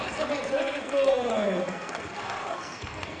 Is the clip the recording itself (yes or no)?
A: no